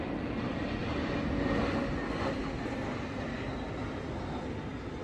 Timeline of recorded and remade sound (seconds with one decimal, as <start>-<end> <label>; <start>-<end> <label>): 0.0-5.0 recorded